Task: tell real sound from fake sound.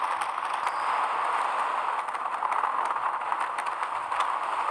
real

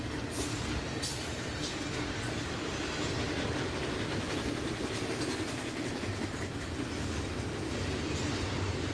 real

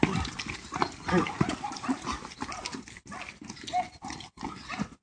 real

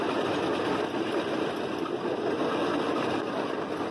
real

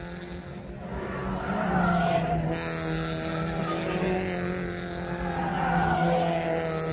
real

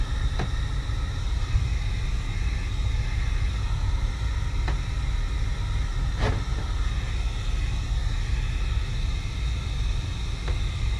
real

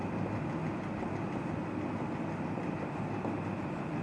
real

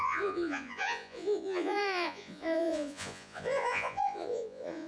fake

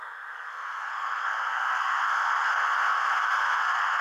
fake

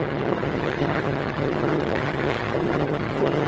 fake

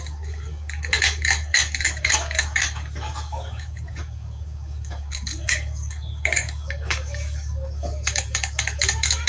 fake